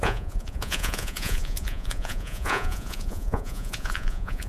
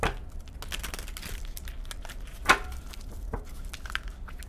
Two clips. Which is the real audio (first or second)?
second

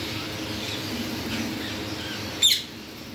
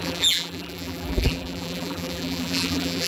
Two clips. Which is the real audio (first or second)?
first